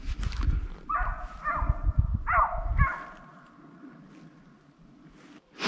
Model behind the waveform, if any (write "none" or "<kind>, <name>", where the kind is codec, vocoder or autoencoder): none